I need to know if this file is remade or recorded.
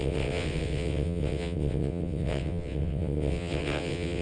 remade